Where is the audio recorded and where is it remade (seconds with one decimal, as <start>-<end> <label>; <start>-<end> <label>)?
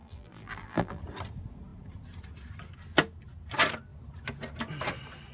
0.0-1.0 remade; 1.0-5.3 recorded